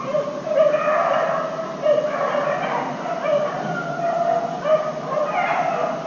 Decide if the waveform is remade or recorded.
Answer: recorded